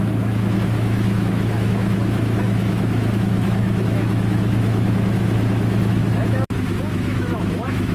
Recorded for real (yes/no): no